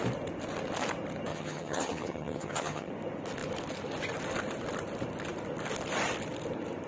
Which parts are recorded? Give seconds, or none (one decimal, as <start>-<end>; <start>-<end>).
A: 0.0-1.3; 2.9-6.9

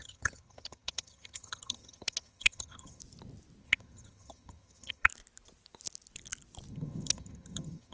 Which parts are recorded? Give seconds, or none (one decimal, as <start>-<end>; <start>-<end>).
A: 3.0-3.6; 5.1-6.7

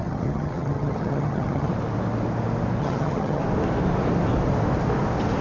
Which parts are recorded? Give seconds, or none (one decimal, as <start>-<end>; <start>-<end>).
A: 1.7-2.8; 3.4-5.4

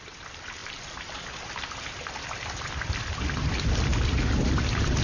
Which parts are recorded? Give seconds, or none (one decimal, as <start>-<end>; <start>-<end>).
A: 0.0-5.0

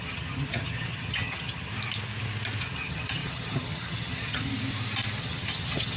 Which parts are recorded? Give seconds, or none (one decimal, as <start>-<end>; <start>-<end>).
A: 1.7-2.6; 4.5-5.2

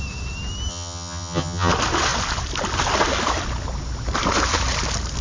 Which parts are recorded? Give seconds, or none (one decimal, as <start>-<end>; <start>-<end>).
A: 0.0-0.7; 1.7-5.2